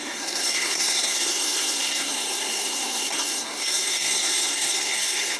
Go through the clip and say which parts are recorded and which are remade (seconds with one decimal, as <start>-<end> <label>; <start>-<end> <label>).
0.0-5.4 remade